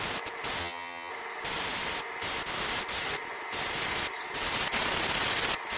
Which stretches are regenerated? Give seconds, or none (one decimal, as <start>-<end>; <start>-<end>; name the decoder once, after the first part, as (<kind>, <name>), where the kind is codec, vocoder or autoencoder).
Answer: 0.6-1.1 (vocoder, HiFi-GAN)